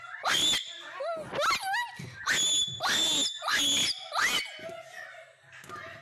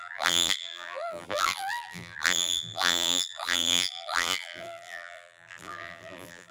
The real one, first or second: first